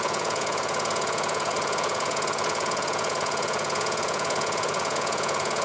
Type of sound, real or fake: fake